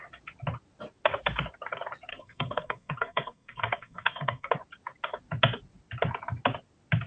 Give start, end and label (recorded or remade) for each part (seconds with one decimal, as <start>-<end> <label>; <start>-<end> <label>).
0.0-2.1 recorded; 2.1-4.5 remade; 4.5-7.1 recorded